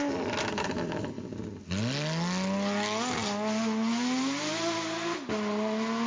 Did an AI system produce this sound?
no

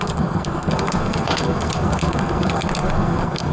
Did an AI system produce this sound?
yes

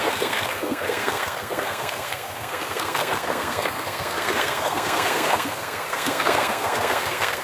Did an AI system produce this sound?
yes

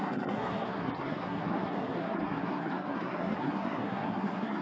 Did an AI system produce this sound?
yes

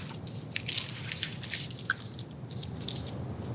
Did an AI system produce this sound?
no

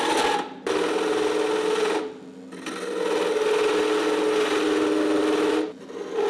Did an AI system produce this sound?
no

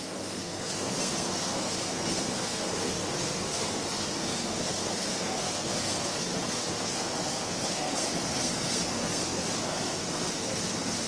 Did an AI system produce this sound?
yes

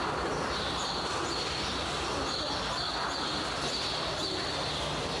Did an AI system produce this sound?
no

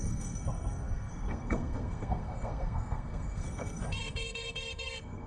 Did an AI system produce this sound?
yes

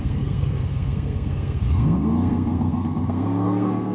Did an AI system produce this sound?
yes